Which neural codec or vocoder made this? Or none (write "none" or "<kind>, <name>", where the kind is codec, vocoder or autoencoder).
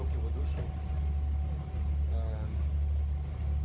none